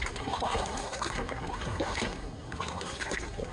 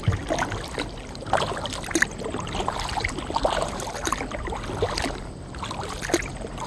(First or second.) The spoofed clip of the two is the first